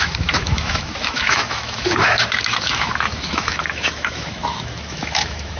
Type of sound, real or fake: fake